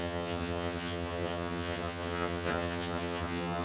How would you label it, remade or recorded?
remade